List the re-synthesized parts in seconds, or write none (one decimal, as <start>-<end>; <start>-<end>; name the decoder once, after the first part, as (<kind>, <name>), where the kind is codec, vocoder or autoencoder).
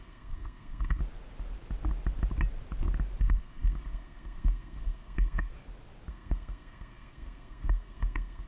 0.0-1.0 (codec, SNAC); 3.2-5.5; 6.1-8.5